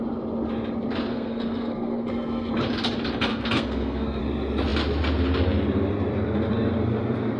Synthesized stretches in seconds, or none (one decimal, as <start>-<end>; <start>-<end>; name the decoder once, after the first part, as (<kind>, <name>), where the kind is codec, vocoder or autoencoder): 1.1-2.5 (codec, SNAC); 3.3-4.2

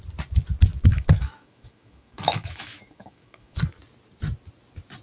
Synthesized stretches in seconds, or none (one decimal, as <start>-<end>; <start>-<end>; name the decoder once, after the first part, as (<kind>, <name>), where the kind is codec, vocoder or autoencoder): 0.9-3.6 (autoencoder, DAC-VAE)

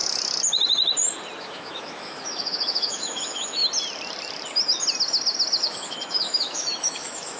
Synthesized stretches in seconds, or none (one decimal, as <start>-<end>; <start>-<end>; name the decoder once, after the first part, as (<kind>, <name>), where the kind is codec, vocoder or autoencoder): 1.4-3.6 (autoencoder, DAC-VAE); 5.6-7.4

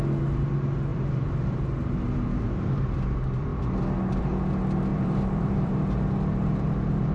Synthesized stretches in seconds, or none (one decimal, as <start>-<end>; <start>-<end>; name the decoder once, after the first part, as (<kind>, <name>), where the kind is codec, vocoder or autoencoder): 0.9-1.6 (vocoder, BigVGAN v2); 4.9-5.7

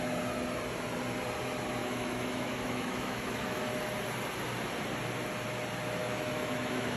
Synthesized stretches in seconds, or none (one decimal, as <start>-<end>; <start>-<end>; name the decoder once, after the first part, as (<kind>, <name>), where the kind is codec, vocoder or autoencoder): 1.8-3.6 (autoencoder, DAC-VAE); 6.0-7.0

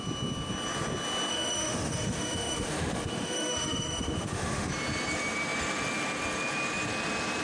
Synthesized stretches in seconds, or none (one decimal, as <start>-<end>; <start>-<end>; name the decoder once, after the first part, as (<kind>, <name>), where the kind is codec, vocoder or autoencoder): 1.3-4.7 (autoencoder, DAC-VAE)